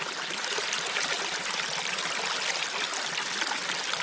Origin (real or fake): real